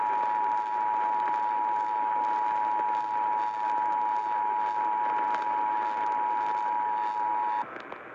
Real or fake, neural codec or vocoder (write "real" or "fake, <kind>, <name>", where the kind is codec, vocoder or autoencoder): real